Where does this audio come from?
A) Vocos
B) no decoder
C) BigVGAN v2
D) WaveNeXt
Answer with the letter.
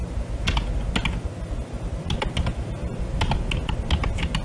B